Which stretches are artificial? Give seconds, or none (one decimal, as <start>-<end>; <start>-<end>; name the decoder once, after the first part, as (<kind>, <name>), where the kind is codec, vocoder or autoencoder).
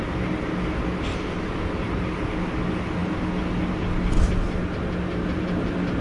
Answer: none